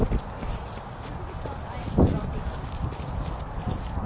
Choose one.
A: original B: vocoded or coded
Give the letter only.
A